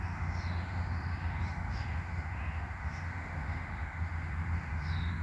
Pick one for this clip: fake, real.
fake